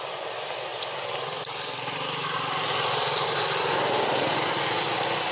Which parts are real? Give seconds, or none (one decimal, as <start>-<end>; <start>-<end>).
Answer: 0.0-5.3